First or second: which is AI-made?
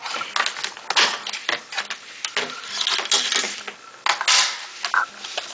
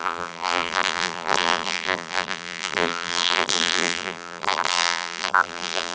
second